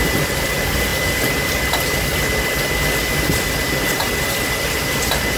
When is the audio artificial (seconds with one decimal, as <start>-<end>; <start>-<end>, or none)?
none